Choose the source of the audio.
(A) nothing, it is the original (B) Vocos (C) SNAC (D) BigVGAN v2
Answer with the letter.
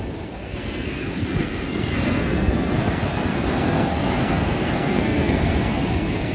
C